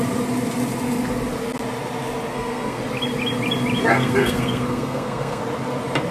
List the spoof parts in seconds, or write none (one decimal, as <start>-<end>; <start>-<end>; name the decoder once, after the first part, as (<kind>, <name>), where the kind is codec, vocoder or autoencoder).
2.3-2.8 (codec, SNAC); 3.8-5.4